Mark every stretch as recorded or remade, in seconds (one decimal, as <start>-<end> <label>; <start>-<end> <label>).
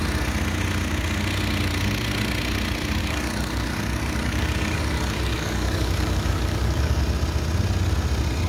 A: 0.0-3.0 recorded; 3.0-7.0 remade; 7.0-8.5 recorded